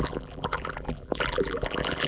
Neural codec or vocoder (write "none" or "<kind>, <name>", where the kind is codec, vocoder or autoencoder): vocoder, BigVGAN v2